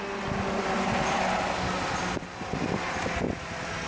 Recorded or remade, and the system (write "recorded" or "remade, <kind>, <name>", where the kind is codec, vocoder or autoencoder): recorded